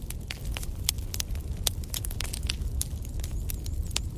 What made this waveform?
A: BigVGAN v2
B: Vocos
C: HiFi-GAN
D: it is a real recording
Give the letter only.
D